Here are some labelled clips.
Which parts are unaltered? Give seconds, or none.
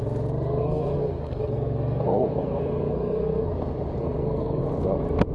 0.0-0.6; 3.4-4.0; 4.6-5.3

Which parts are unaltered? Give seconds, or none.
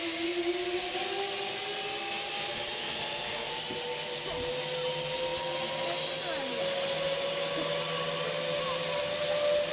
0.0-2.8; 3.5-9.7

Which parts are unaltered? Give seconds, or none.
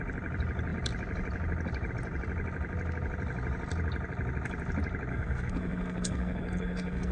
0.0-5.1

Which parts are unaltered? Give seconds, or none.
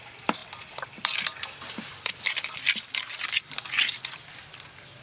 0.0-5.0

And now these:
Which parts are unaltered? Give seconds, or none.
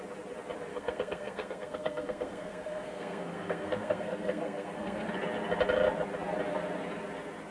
0.0-0.7; 5.1-7.5